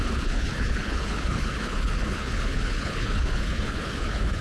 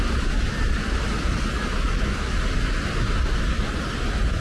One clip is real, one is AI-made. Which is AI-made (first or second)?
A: first